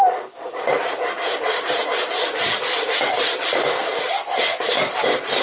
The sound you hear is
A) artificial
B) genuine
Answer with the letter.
A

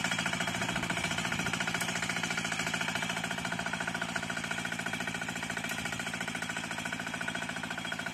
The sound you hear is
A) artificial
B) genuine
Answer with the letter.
B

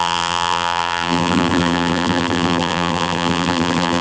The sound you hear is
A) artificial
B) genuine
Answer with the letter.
A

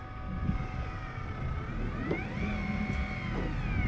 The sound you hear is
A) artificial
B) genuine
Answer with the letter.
B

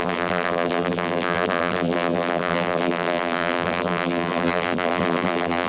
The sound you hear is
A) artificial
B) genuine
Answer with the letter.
A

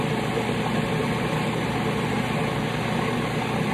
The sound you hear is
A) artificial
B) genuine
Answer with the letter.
B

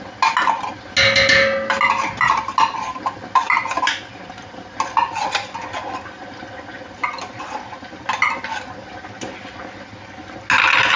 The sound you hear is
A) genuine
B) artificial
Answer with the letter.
A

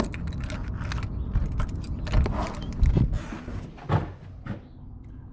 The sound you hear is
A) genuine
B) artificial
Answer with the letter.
A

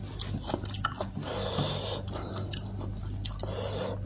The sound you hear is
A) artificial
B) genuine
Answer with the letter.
B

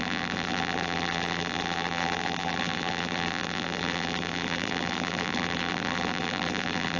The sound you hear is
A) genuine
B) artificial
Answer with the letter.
B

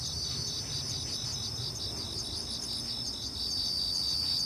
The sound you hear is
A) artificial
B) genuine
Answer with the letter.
B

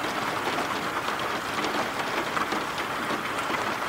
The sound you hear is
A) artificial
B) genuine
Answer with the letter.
B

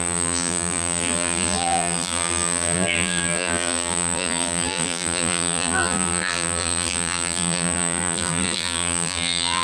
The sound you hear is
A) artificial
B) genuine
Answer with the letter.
A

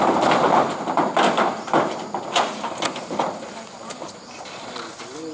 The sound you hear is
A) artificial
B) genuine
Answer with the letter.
A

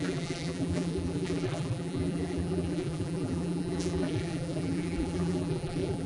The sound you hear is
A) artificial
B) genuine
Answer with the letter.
A